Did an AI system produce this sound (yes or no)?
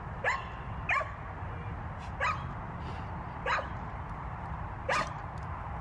no